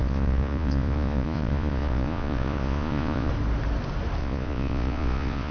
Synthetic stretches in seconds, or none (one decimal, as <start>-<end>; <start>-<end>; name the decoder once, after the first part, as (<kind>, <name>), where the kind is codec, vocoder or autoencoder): 0.0-3.3 (vocoder, Vocos); 4.2-5.5